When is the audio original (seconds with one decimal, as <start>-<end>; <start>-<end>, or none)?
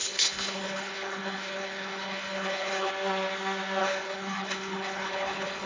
2.9-3.8